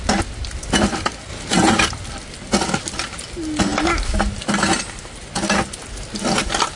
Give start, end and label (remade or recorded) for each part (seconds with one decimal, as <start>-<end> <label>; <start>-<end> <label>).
0.0-6.8 recorded